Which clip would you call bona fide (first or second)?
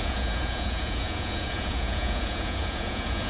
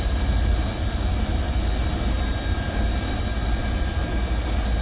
second